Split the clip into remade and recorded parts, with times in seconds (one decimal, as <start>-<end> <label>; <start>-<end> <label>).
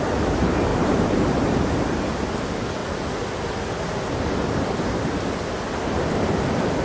0.0-0.7 recorded; 0.7-1.6 remade; 1.6-6.8 recorded